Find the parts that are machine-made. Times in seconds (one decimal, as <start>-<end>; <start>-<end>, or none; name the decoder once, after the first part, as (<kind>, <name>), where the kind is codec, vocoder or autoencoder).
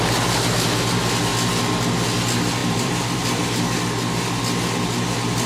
2.6-3.8 (vocoder, BigVGAN v2)